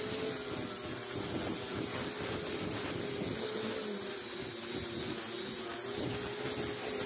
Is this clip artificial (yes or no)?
no